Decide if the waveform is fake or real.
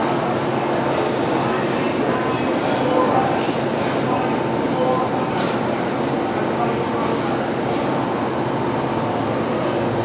real